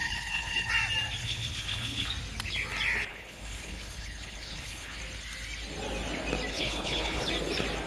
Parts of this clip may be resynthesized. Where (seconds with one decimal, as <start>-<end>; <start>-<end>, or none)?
0.0-0.7; 1.2-2.1; 3.1-5.0; 6.5-7.3